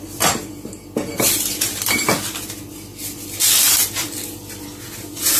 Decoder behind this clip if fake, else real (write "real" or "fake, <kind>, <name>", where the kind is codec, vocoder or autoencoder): real